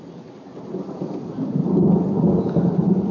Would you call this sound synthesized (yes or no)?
no